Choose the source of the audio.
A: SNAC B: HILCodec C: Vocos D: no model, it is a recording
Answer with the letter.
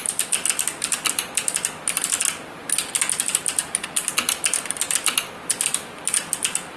D